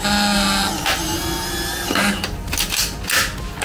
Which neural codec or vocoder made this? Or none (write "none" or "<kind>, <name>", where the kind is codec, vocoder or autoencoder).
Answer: none